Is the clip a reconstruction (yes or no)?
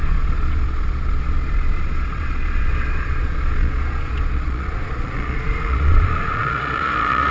yes